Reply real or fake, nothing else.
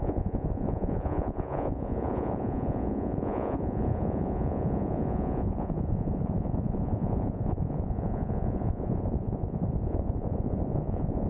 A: fake